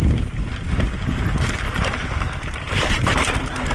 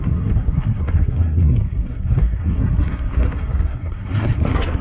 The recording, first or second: first